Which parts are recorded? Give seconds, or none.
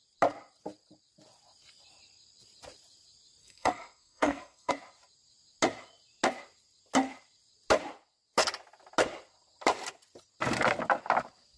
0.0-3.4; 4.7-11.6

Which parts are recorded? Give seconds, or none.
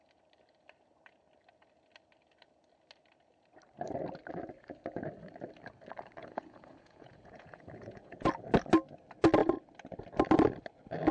0.0-6.2; 8.3-11.1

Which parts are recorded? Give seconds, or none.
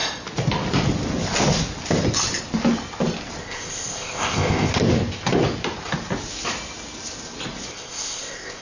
0.0-3.4; 4.7-7.7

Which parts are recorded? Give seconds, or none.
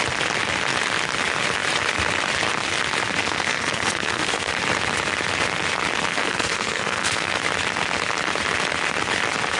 0.0-3.2; 4.5-6.1; 7.4-9.6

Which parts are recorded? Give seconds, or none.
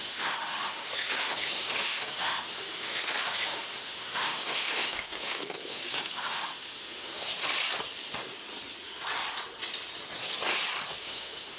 7.3-11.0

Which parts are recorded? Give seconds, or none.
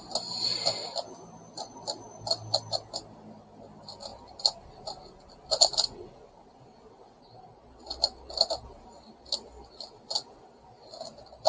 0.0-11.5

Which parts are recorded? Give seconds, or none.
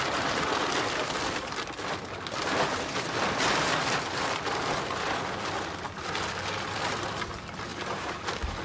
0.0-8.6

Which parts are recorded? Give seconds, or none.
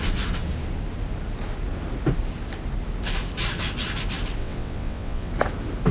0.0-4.4; 5.3-5.9